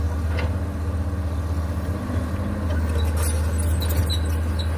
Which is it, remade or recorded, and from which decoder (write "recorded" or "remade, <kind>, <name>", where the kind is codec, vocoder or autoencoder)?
recorded